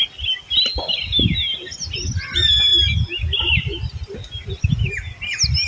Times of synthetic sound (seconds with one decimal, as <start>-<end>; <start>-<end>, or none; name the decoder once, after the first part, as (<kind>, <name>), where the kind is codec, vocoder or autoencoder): none